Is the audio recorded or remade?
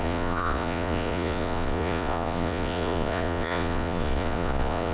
remade